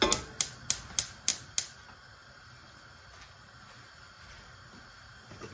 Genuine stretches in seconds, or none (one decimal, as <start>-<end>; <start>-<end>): 0.0-5.5